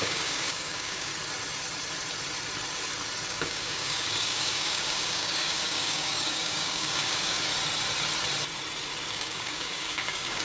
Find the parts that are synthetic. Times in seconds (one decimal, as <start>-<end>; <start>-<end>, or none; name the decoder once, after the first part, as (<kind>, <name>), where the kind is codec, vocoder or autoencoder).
0.0-1.1 (codec, DAC); 3.3-7.5; 9.1-10.4